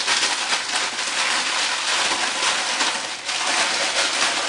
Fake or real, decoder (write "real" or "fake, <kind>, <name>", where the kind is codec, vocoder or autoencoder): real